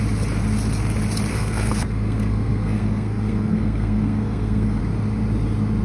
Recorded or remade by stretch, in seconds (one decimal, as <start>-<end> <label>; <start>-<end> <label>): 0.0-1.3 recorded; 1.3-4.8 remade; 4.8-5.8 recorded